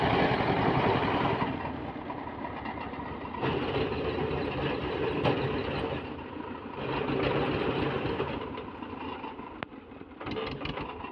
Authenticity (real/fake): real